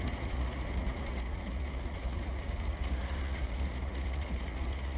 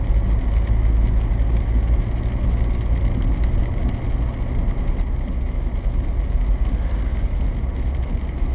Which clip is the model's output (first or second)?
first